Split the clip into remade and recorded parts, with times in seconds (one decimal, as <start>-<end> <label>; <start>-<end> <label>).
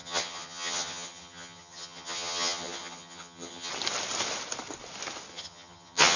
0.0-3.7 remade; 3.7-5.3 recorded; 5.3-6.2 remade